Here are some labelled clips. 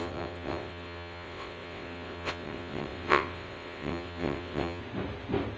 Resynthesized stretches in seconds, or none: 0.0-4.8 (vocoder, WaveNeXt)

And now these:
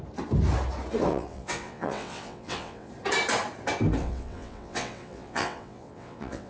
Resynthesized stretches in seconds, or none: 1.1-2.9 (vocoder, WaveNeXt); 4.0-6.5

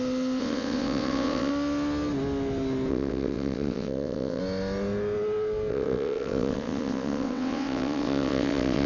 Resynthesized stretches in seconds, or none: 0.4-1.5 (vocoder, WaveNeXt); 2.9-4.4; 5.7-8.9

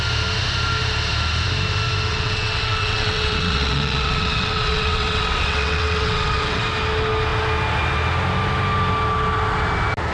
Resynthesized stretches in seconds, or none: 2.1-6.6 (vocoder, WaveNeXt)

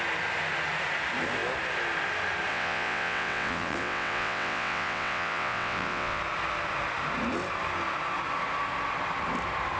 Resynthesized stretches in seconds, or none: 2.5-6.2 (vocoder, WaveNeXt)